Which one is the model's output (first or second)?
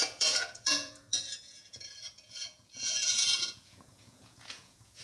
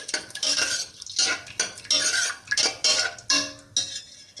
first